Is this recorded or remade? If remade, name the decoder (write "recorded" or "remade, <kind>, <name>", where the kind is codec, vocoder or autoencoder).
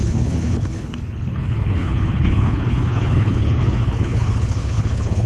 remade, codec, HILCodec